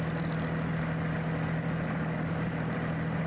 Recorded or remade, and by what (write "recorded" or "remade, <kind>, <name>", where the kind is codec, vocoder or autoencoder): recorded